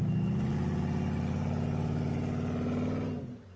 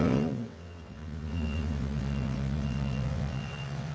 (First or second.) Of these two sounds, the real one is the first